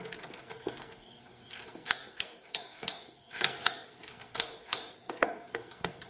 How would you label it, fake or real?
fake